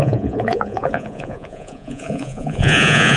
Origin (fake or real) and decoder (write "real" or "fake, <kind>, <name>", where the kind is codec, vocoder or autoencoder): fake, vocoder, Vocos